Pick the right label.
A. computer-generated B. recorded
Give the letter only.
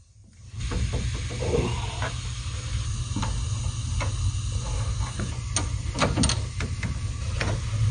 B